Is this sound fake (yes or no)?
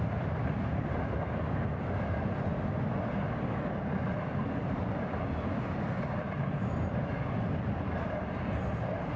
no